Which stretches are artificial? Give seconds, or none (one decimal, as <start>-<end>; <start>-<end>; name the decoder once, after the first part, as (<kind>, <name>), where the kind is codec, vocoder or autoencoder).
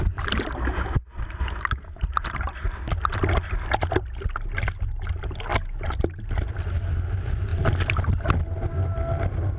none